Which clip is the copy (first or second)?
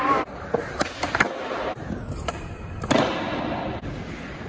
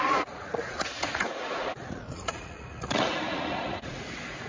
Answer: second